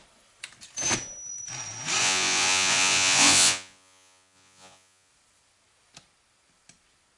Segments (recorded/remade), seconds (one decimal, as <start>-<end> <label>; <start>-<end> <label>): 0.0-2.0 recorded; 2.0-5.1 remade; 5.1-7.2 recorded